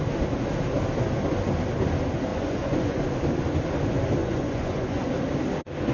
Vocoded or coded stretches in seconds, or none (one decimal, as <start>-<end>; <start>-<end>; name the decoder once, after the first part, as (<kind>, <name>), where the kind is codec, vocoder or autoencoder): 2.3-3.0 (vocoder, Vocos); 4.2-5.1